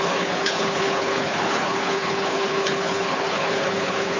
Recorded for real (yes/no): no